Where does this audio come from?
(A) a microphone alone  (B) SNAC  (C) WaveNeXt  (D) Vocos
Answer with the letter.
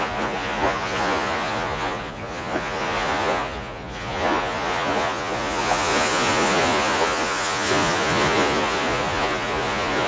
D